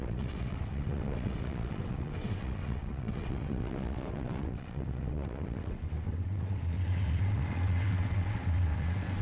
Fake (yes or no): yes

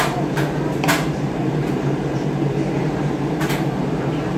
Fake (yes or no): yes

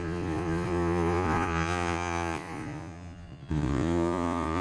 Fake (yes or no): yes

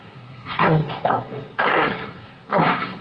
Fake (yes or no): yes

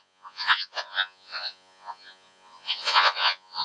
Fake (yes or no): yes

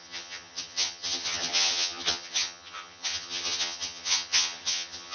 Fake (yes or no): yes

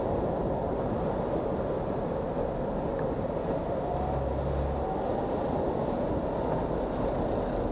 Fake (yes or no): no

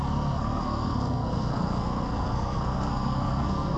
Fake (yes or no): yes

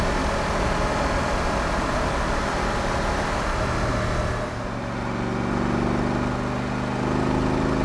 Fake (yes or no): no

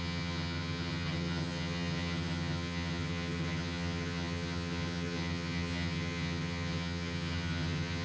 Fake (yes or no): yes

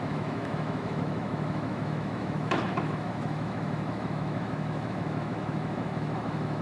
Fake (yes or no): yes